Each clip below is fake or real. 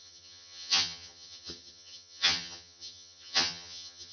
fake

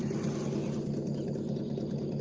real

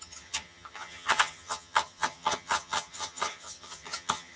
fake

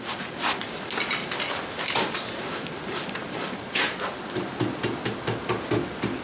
real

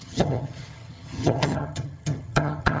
fake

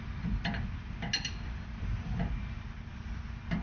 real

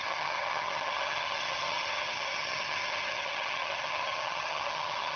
fake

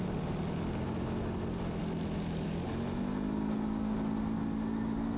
real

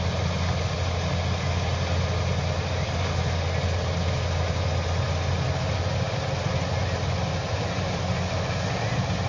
real